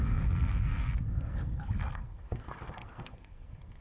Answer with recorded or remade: remade